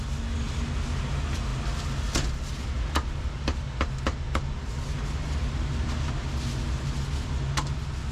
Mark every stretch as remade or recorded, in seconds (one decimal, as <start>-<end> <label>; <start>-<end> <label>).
0.0-8.1 recorded